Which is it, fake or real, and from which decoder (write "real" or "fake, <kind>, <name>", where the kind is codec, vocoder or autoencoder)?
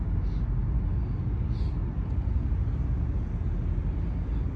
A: real